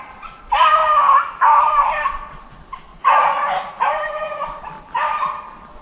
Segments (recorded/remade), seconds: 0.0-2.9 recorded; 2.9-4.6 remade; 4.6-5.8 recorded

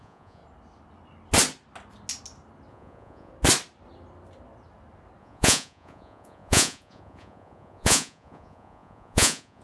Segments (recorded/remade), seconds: 0.0-0.4 remade; 0.4-2.7 recorded; 2.7-3.3 remade; 3.3-5.2 recorded; 5.2-9.6 remade